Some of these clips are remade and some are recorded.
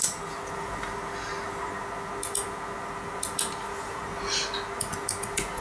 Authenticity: recorded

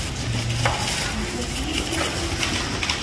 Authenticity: recorded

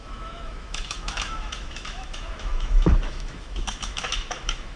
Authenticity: remade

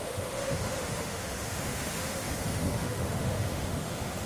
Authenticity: remade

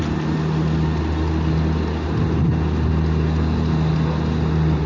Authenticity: recorded